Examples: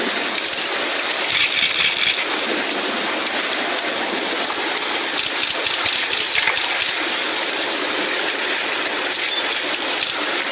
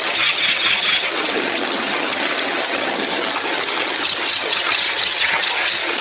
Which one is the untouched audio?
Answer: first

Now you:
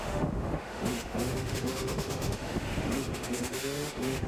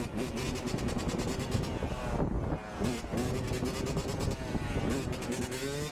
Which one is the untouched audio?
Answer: second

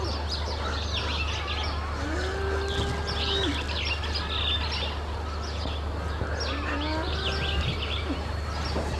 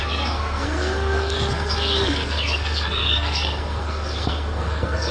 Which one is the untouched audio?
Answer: first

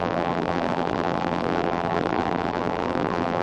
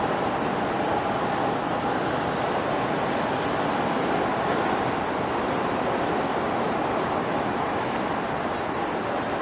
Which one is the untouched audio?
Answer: second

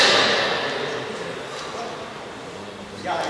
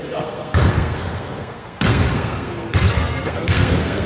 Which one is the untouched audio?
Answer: first